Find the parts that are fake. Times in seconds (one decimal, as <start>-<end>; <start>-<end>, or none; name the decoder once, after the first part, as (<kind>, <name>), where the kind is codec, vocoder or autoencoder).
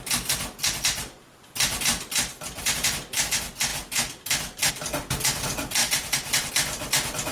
5.8-6.5 (vocoder, BigVGAN v2)